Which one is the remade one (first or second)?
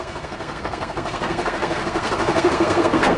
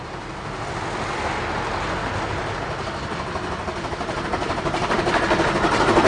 first